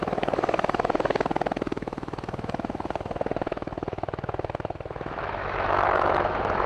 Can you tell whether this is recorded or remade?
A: remade